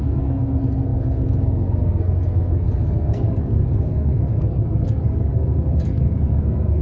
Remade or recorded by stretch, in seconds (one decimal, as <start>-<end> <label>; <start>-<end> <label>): 0.0-6.8 remade